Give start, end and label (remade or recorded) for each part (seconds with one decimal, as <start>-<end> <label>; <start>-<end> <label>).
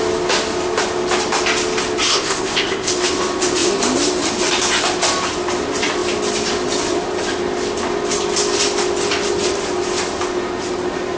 0.0-2.1 recorded; 2.1-2.9 remade; 2.9-11.2 recorded